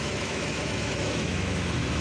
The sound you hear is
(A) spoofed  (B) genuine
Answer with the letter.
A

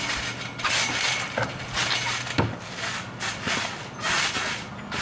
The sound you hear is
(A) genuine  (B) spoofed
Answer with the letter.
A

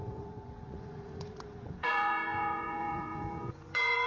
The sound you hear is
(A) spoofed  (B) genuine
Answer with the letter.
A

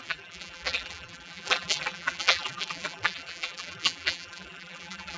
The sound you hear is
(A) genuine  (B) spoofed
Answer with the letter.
B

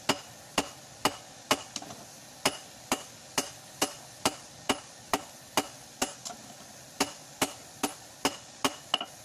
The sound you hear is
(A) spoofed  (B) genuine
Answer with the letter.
B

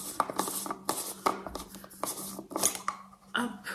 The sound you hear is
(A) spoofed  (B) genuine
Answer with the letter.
B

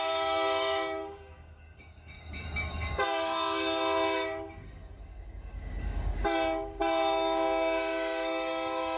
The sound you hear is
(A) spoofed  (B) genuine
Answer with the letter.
A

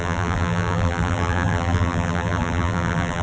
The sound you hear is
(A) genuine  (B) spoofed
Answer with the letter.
B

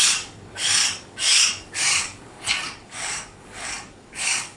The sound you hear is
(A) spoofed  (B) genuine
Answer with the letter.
A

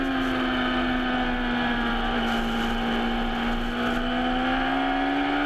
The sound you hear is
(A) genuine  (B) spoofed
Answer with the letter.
A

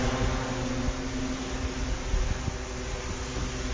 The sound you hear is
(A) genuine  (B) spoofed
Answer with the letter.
A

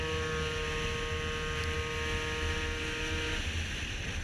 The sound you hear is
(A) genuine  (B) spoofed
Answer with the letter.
A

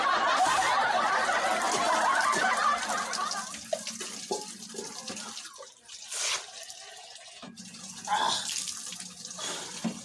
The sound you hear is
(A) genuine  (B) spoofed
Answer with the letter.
A